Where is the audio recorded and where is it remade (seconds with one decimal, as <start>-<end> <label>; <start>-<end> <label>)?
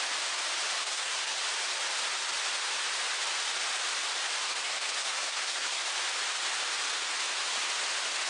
0.0-0.8 recorded; 0.8-1.4 remade; 1.4-4.4 recorded; 4.4-5.8 remade; 5.8-8.3 recorded